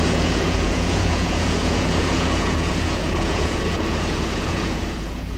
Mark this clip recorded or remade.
remade